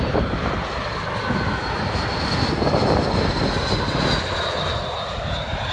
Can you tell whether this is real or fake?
real